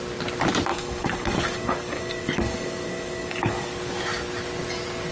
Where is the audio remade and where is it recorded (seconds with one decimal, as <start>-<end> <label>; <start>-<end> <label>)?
0.0-0.7 recorded; 0.7-3.8 remade; 3.8-5.1 recorded